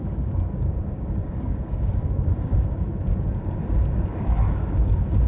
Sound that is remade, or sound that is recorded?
remade